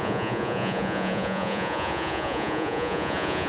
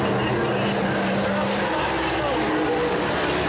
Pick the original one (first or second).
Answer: second